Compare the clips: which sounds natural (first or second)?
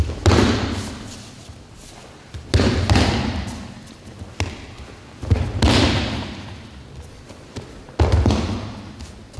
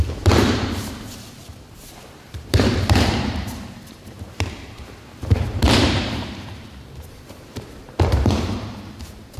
first